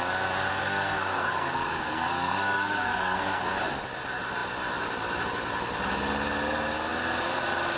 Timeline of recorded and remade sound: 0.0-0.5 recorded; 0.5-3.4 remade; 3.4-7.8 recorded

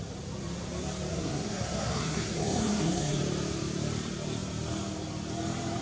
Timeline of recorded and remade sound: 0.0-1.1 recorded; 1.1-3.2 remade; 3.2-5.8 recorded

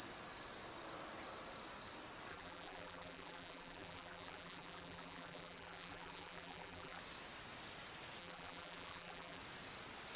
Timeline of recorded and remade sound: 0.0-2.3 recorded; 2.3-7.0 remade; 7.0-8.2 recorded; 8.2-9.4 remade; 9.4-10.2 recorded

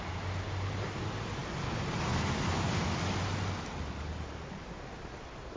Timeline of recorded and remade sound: 0.0-5.6 recorded

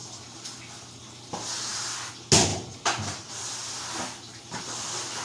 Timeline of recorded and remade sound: 0.0-5.2 recorded